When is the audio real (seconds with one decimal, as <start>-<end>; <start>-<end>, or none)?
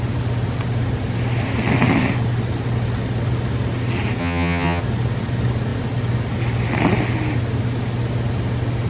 0.0-4.2; 4.8-8.9